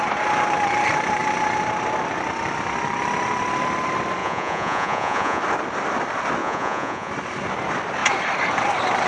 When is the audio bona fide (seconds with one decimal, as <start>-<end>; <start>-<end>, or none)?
0.0-4.2; 5.4-6.4; 7.1-9.1